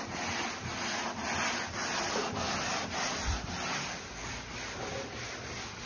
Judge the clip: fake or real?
real